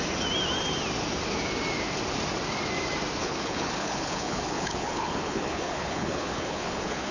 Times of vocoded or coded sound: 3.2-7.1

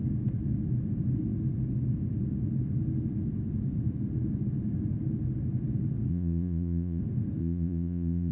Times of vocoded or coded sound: 6.1-7.0; 7.4-8.3

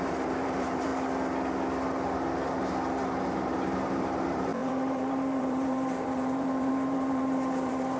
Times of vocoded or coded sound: 0.0-0.9; 3.2-8.0